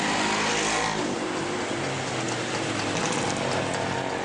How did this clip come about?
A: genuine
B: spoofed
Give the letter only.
A